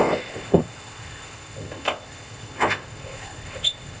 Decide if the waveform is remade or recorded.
remade